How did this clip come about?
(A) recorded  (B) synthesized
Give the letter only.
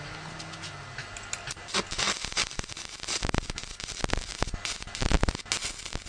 A